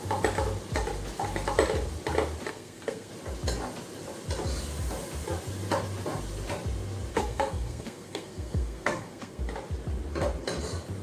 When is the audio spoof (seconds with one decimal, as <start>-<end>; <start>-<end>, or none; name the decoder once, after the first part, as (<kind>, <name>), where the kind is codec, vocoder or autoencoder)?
2.5-3.1 (codec, SNAC); 7.1-9.4